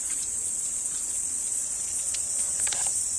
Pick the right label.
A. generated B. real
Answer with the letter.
A